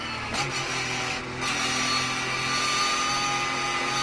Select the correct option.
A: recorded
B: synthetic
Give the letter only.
A